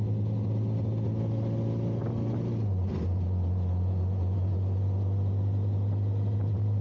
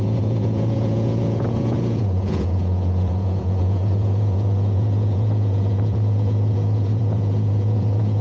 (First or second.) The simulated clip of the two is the second